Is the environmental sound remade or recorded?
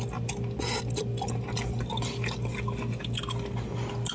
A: recorded